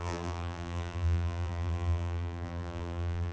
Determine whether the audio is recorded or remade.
remade